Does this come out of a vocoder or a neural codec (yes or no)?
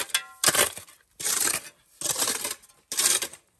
no